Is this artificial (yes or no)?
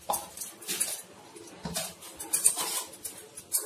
no